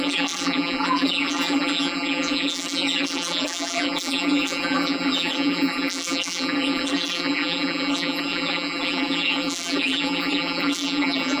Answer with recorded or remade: remade